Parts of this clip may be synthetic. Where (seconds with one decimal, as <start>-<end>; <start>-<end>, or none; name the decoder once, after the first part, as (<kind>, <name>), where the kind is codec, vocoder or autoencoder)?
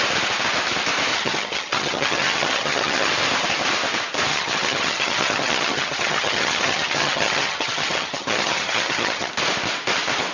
1.1-3.1 (vocoder, HiFi-GAN); 4.3-9.3